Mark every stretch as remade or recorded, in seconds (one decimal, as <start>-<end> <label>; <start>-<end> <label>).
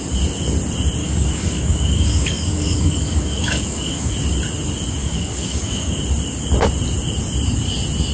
0.0-1.0 recorded; 1.0-4.1 remade; 4.1-5.0 recorded; 5.0-6.0 remade; 6.0-8.1 recorded